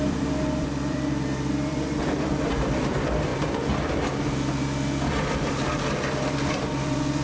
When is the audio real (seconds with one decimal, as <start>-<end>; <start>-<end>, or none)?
3.3-5.5